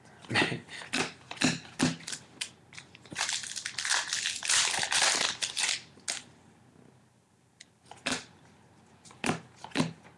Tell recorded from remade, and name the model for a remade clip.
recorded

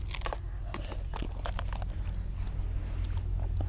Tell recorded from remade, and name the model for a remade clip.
recorded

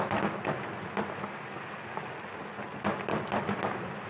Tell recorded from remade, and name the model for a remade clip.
recorded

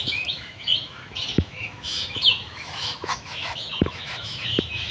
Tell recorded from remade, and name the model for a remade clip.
remade, autoencoder, DAC-VAE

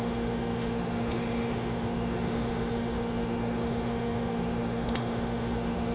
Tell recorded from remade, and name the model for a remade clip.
remade, autoencoder, DAC-VAE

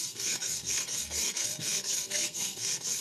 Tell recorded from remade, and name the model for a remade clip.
remade, codec, SNAC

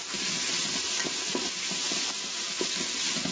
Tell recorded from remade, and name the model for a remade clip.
recorded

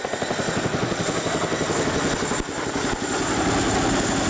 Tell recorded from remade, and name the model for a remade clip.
recorded